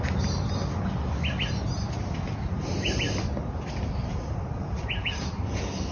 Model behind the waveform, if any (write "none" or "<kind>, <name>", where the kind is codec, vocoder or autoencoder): none